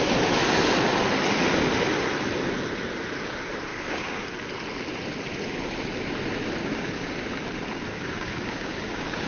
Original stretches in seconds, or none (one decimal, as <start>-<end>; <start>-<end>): 0.0-3.7; 4.3-6.6; 7.2-7.9